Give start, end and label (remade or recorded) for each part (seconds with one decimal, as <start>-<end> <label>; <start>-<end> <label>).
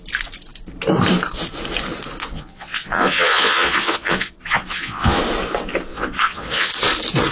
0.0-2.2 recorded; 2.2-5.2 remade; 5.2-5.9 recorded; 5.9-6.7 remade; 6.7-7.3 recorded